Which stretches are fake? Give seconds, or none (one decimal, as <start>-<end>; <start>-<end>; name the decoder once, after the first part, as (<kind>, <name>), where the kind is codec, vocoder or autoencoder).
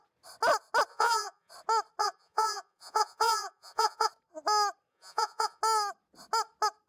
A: 0.9-1.5 (vocoder, Vocos); 2.0-4.1; 4.9-5.6